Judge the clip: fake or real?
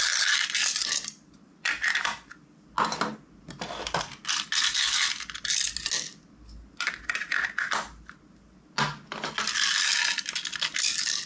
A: real